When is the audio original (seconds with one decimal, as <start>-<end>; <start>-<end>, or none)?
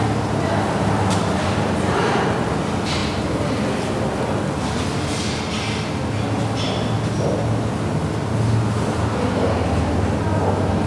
0.0-10.9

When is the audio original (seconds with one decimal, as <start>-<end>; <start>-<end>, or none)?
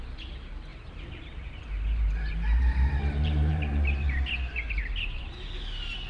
0.0-0.7; 4.4-6.1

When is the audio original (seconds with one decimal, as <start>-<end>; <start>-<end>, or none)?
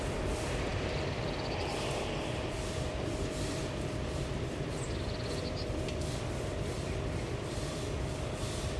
none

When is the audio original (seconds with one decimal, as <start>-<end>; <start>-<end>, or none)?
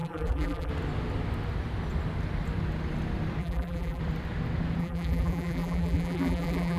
0.7-3.4; 4.0-4.8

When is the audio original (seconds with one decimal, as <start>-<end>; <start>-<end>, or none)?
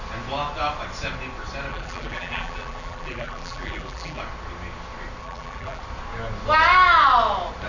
0.0-1.7; 4.2-5.2; 5.8-7.7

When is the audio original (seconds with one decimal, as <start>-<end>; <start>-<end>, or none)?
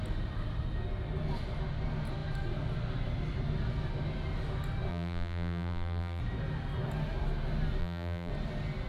0.0-4.9; 6.2-7.8; 8.3-8.9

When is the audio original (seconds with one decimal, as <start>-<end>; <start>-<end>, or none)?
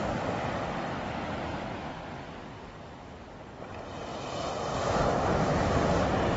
0.8-1.5; 2.8-6.4